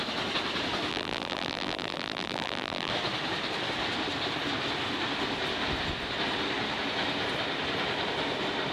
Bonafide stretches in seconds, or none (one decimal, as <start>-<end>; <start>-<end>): 0.0-0.9; 2.9-8.7